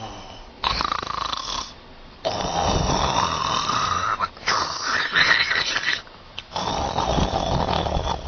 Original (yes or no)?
yes